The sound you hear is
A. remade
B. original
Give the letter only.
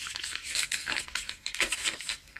A